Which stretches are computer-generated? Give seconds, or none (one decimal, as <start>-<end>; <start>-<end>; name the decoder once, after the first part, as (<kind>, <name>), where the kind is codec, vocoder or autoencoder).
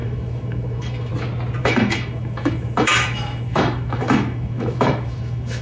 0.0-1.1 (autoencoder, DAC-VAE); 1.6-5.6